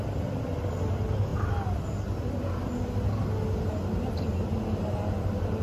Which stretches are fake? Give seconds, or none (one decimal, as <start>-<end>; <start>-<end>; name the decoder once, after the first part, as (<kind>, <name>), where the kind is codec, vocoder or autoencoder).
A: none